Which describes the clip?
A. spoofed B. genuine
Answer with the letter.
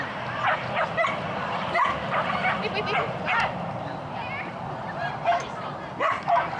B